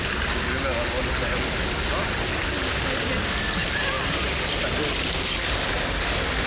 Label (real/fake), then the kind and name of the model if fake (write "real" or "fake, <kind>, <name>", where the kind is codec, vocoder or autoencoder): real